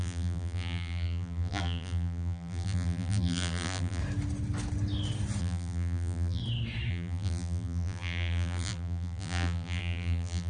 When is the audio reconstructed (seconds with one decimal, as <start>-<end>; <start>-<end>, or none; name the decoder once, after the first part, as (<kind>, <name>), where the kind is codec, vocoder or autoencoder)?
0.0-4.0 (vocoder, BigVGAN v2); 5.4-6.4; 6.9-10.5